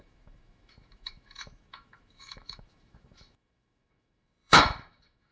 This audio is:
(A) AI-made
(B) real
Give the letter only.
A